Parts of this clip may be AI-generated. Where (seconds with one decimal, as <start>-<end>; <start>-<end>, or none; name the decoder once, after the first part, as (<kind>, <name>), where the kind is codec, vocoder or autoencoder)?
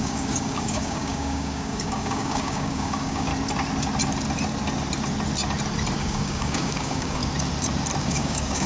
0.0-3.3 (codec, DAC); 6.0-7.2; 8.0-8.7